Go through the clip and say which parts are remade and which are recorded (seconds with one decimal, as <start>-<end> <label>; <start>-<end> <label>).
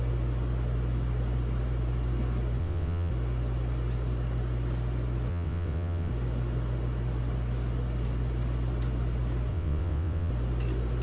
0.0-2.6 recorded; 2.6-3.1 remade; 3.1-5.3 recorded; 5.3-6.1 remade; 6.1-9.5 recorded; 9.5-10.3 remade; 10.3-11.0 recorded